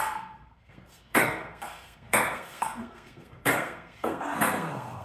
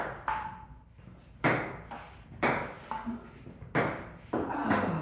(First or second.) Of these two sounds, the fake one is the first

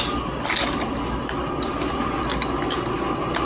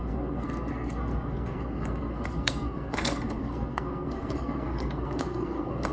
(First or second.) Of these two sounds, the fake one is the second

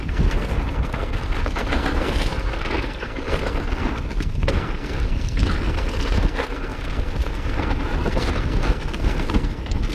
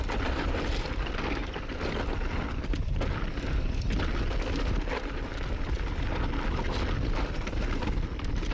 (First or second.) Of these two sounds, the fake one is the first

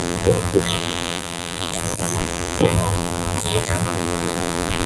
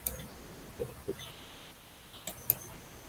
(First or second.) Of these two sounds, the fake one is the first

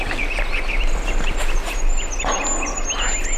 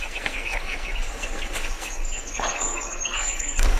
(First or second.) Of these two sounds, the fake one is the second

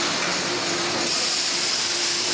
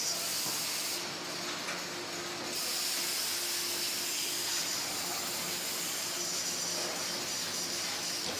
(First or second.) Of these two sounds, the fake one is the first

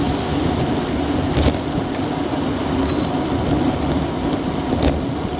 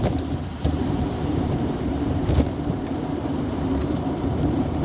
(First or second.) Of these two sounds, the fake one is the second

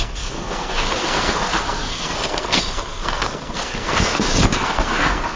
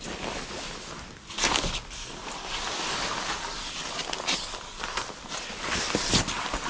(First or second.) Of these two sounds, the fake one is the first